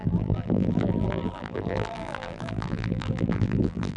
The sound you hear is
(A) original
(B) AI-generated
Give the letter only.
B